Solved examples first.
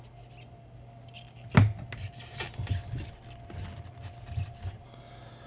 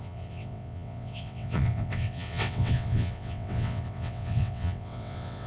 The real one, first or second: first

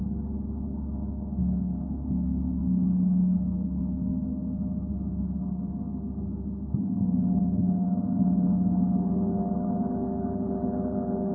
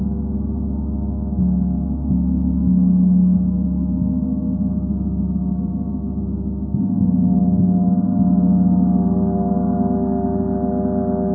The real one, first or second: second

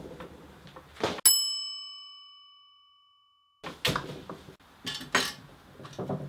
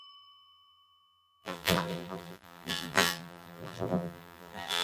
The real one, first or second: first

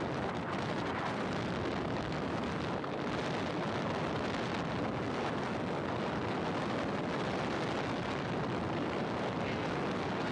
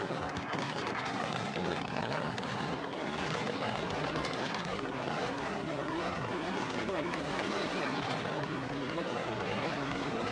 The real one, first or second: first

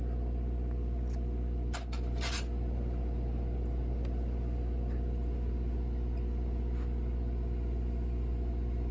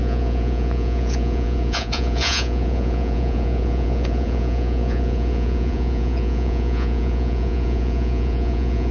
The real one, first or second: first